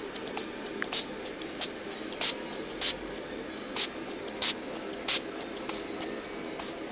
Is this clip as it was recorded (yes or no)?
yes